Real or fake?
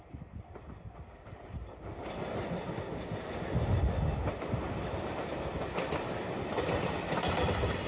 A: real